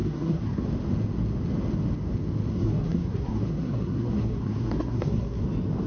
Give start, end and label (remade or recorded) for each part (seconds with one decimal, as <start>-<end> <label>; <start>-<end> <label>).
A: 0.0-0.6 remade; 0.6-2.5 recorded; 2.5-5.4 remade; 5.4-5.9 recorded